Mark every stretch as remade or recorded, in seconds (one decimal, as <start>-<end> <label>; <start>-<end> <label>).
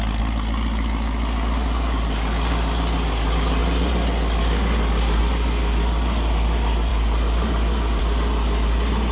0.0-9.1 recorded